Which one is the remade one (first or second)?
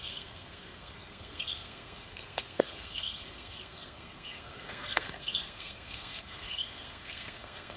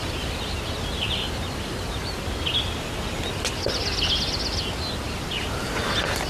first